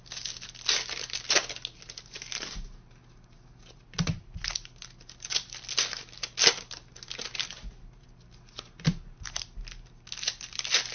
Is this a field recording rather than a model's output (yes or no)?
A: yes